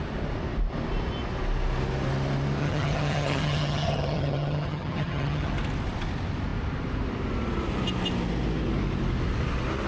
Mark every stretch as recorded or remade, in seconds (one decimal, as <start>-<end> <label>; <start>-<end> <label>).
0.0-2.6 recorded; 2.6-5.5 remade; 5.5-9.9 recorded